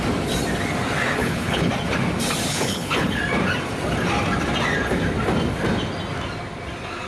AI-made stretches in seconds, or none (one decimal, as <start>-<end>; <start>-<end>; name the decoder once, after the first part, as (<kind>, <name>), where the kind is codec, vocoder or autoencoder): 1.2-1.7 (codec, HILCodec); 2.5-3.2